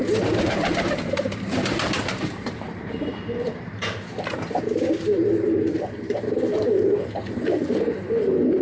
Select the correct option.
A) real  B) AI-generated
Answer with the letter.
B